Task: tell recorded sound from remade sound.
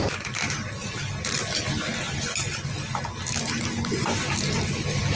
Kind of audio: recorded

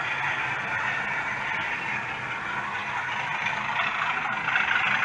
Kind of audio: recorded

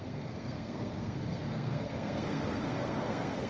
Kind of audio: remade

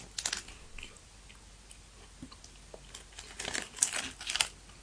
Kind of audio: recorded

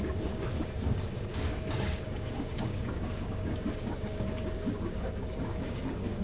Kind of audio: remade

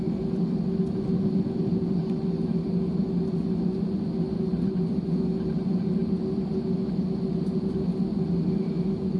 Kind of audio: recorded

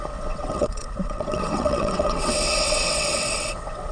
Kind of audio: remade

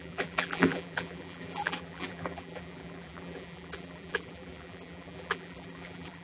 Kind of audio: remade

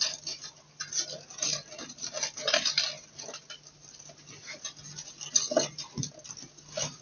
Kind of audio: recorded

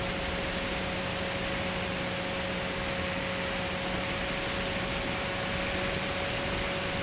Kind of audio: recorded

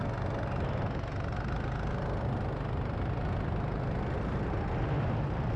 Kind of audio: recorded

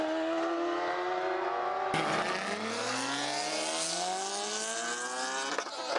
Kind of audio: recorded